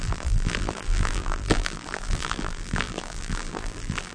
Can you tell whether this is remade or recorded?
remade